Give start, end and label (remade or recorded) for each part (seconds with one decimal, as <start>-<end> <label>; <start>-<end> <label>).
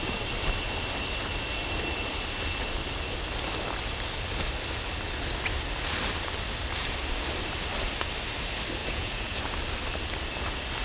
0.0-8.8 recorded; 8.8-9.4 remade; 9.4-10.8 recorded